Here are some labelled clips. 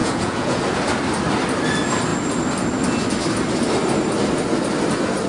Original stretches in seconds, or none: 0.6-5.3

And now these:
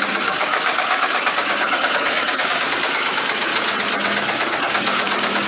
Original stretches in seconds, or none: 3.5-4.6

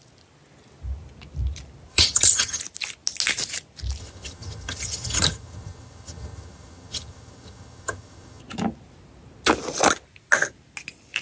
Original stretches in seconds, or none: 0.0-1.9; 2.6-4.0; 8.4-11.2

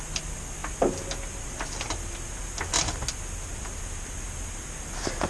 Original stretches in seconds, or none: 0.0-5.3

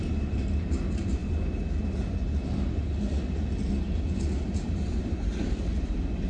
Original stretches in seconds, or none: 0.0-6.3

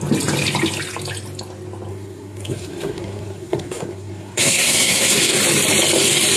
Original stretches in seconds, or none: 0.0-1.9; 5.4-6.4